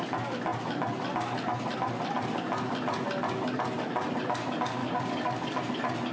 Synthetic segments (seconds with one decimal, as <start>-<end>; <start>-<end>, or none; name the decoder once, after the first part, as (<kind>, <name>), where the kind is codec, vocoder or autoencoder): 4.8-5.6 (codec, DAC)